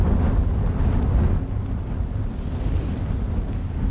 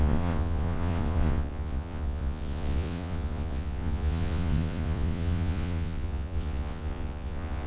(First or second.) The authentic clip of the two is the first